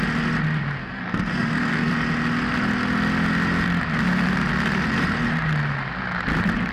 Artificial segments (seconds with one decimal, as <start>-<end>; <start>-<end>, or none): 0.8-1.9